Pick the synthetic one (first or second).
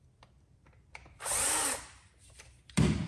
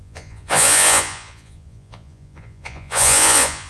second